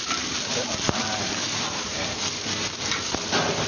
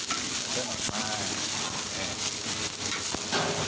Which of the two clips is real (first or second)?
second